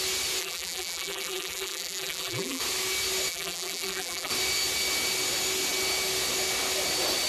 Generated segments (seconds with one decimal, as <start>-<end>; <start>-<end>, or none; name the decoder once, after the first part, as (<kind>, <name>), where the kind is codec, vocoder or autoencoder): 0.4-2.6 (vocoder, BigVGAN v2); 3.3-4.3